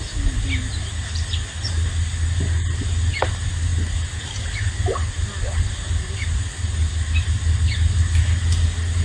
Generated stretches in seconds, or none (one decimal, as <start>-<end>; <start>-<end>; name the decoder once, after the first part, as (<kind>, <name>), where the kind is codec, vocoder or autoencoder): none